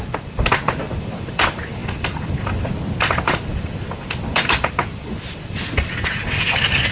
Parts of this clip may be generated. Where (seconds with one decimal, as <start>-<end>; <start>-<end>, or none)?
none